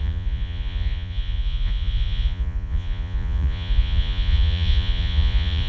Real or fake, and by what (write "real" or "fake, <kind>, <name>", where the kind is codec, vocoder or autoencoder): fake, vocoder, Vocos